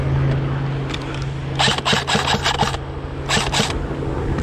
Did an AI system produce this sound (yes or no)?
no